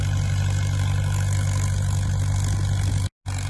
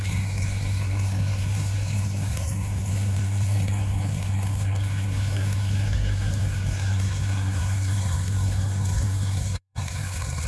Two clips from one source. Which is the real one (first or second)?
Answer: first